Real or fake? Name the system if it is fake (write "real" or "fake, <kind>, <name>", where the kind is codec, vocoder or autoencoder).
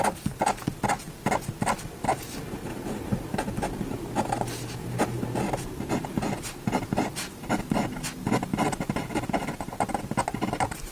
real